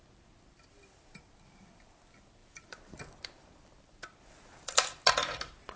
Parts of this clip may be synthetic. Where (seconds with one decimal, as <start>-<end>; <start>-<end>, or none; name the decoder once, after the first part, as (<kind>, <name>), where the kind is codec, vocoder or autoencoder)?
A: 2.4-5.1 (vocoder, BigVGAN v2)